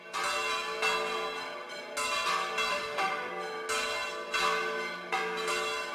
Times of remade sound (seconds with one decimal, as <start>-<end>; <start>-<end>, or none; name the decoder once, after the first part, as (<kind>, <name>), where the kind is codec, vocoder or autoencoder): 2.7-3.3 (autoencoder, DAC-VAE)